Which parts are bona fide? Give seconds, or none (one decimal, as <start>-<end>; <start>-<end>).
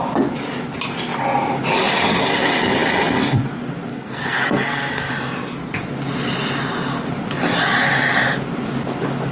0.0-3.9; 5.1-9.3